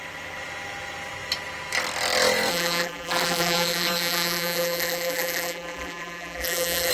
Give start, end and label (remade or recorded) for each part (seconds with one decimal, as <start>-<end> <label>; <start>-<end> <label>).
0.0-2.5 recorded; 2.5-6.9 remade